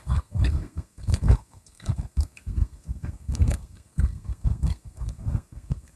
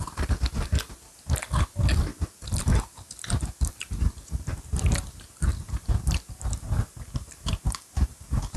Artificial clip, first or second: first